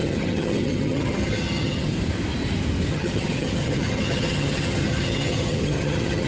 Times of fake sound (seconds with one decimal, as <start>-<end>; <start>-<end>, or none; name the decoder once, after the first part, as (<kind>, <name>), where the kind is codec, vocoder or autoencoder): 0.0-1.9 (vocoder, HiFi-GAN); 2.9-6.3